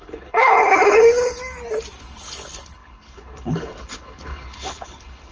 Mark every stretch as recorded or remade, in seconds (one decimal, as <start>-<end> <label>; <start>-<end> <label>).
0.0-1.4 remade; 1.4-2.0 recorded; 2.0-5.3 remade

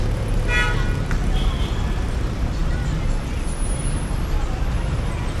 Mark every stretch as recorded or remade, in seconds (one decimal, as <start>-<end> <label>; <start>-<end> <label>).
0.0-5.4 recorded

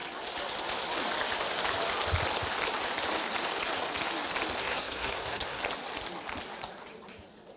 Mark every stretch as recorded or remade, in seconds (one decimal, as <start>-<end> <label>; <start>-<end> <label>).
0.0-4.6 recorded; 4.6-5.6 remade; 5.6-7.6 recorded

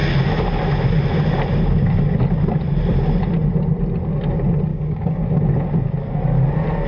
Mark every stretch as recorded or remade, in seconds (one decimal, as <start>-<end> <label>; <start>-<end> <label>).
0.0-4.7 recorded; 4.7-5.2 remade; 5.2-6.9 recorded

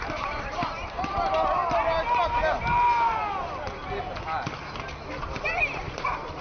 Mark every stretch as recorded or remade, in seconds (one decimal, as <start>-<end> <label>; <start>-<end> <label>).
0.0-1.6 remade; 1.6-5.4 recorded; 5.4-6.4 remade

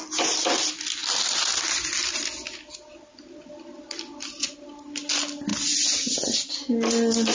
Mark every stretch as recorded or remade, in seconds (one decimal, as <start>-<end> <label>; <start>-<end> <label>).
0.0-7.3 recorded

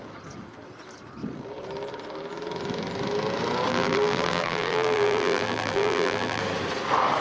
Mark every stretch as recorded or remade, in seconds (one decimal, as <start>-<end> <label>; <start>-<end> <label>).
0.0-3.7 recorded; 3.7-6.4 remade; 6.4-7.2 recorded

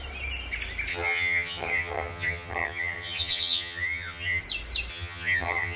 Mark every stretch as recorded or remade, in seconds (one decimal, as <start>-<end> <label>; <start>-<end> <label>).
0.0-0.9 recorded; 0.9-4.4 remade; 4.4-4.9 recorded; 4.9-5.8 remade